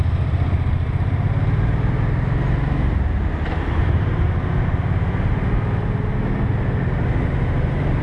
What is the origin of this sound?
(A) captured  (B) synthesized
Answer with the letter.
A